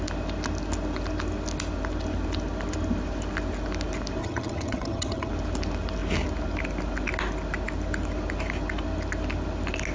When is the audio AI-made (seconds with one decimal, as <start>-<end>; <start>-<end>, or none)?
4.2-5.3

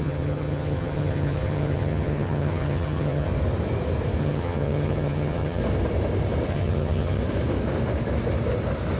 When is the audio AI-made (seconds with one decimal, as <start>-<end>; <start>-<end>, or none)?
0.0-3.3; 4.2-5.6; 6.5-7.2

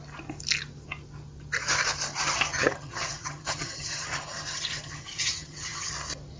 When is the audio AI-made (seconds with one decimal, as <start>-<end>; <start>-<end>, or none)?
2.1-5.9

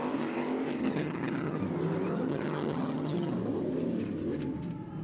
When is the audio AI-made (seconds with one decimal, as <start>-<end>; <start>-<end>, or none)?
0.8-1.6; 2.1-3.3

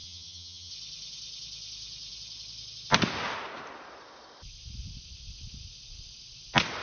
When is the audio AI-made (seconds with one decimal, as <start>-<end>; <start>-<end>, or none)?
0.0-0.7

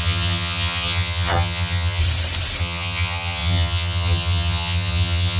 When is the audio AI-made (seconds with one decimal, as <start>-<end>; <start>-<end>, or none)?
0.0-2.0; 2.6-5.4